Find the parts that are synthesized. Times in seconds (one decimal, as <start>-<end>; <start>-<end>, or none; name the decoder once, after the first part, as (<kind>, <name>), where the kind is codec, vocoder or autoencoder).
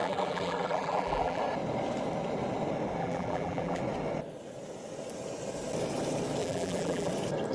0.0-1.4 (vocoder, BigVGAN v2); 3.0-3.8; 6.4-7.1